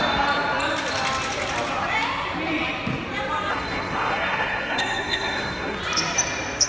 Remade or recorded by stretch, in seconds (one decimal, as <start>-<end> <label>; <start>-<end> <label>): 0.0-3.5 recorded; 3.5-5.8 remade; 5.8-6.7 recorded